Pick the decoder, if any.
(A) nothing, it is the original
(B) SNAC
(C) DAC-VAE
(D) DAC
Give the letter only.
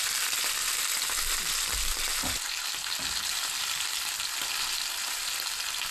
A